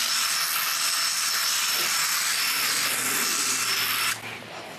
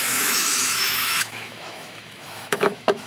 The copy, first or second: second